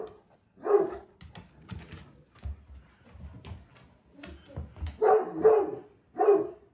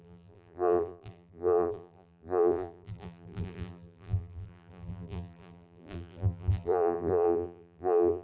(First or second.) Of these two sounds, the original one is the first